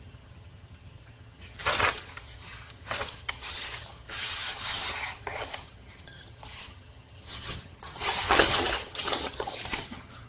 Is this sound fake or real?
fake